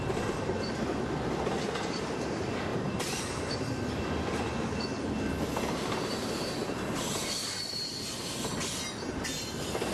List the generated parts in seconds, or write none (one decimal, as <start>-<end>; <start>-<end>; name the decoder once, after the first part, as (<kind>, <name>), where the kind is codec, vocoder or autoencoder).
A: 2.7-3.2 (vocoder, BigVGAN v2); 6.6-8.2